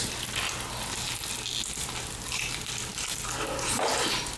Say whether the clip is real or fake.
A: real